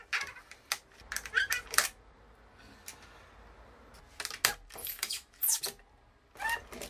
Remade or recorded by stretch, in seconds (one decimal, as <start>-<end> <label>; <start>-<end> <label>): 0.0-4.8 recorded; 4.8-5.6 remade; 5.6-6.9 recorded